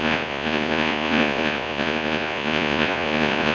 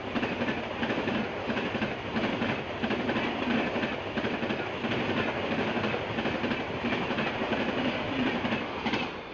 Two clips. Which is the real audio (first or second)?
second